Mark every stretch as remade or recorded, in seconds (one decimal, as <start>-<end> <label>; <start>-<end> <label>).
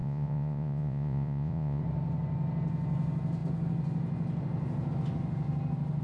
0.0-1.8 remade; 1.8-6.0 recorded